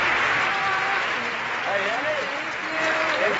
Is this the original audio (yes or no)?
yes